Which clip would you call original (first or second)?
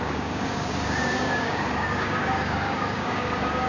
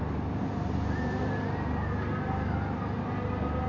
second